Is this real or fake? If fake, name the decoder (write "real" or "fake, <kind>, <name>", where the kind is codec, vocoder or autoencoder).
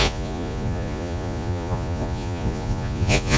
fake, vocoder, Vocos